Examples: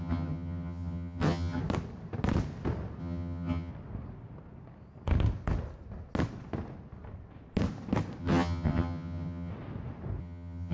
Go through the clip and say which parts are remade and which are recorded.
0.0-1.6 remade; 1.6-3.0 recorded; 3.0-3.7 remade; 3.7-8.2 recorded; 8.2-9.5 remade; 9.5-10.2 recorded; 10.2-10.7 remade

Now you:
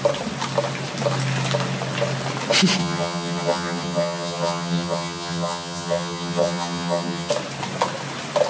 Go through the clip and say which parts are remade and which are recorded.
0.0-2.8 recorded; 2.8-7.3 remade; 7.3-8.5 recorded

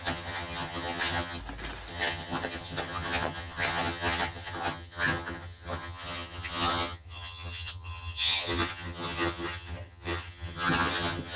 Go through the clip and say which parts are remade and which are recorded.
0.0-1.4 remade; 1.4-1.9 recorded; 1.9-11.4 remade